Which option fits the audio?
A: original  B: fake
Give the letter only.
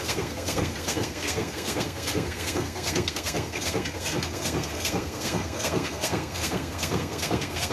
B